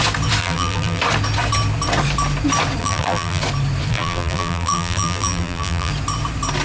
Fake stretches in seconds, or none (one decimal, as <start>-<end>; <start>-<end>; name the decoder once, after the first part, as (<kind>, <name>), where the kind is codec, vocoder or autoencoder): 0.4-1.0 (vocoder, BigVGAN v2); 2.8-3.4; 3.9-5.9